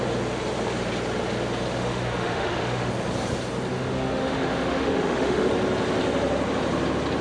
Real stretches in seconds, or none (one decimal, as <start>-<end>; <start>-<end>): 0.0-1.8; 2.9-3.7; 5.5-7.2